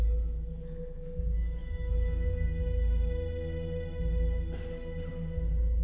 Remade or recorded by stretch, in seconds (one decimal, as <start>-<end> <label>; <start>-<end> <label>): 0.0-5.8 recorded